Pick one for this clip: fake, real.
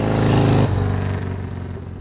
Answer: real